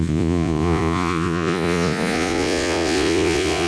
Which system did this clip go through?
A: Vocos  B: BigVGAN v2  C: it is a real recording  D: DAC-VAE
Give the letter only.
A